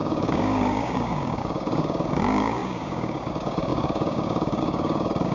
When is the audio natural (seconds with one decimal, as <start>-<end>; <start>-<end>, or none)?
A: none